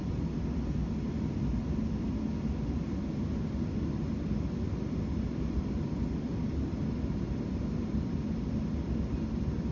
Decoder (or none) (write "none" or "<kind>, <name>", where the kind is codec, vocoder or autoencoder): none